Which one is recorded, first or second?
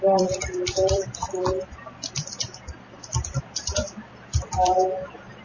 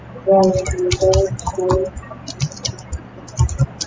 second